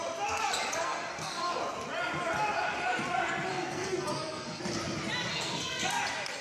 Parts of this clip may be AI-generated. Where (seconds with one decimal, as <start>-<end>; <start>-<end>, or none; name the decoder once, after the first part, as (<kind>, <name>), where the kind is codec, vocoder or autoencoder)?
0.8-1.6 (codec, SNAC); 3.5-4.6; 5.3-5.9